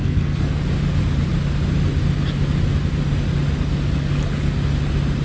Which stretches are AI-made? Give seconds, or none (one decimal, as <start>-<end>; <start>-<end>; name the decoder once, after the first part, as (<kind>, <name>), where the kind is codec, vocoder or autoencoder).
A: 0.0-0.6 (codec, SNAC)

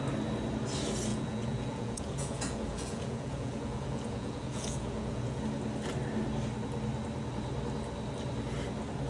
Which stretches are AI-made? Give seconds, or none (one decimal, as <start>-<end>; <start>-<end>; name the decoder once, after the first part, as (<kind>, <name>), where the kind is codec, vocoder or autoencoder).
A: 1.1-5.4 (vocoder, Vocos)

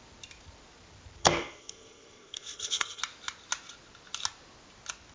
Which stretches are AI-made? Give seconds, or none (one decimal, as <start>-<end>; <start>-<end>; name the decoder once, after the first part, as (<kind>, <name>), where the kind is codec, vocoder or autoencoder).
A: 1.2-3.0 (codec, SNAC)

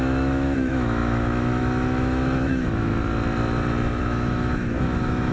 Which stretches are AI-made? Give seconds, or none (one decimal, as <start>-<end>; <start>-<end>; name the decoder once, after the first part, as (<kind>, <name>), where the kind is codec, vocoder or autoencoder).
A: 0.0-2.9 (autoencoder, DAC-VAE); 4.0-5.3

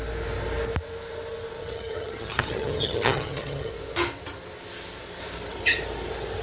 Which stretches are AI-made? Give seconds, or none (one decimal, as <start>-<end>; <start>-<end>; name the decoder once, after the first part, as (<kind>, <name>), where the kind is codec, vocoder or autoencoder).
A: 1.6-3.7 (vocoder, HiFi-GAN)